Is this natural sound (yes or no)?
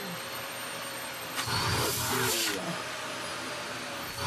yes